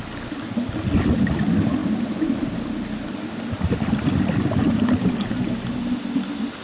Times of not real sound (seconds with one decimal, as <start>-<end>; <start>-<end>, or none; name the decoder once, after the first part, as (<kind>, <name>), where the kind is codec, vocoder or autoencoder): none